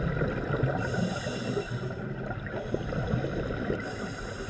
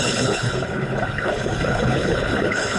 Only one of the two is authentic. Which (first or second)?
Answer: first